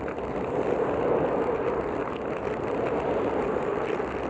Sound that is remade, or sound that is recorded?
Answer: recorded